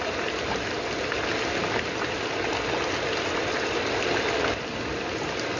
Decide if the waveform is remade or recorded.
recorded